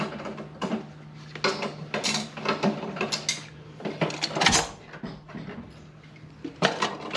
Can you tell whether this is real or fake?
real